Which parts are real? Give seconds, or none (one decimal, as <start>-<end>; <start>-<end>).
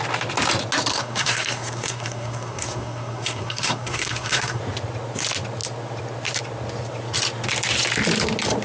0.0-0.9; 4.6-8.6